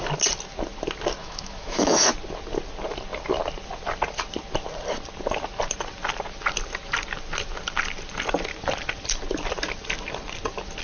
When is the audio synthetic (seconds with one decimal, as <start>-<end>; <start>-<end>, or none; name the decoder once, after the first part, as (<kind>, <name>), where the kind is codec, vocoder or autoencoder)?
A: 1.2-2.1 (autoencoder, DAC-VAE)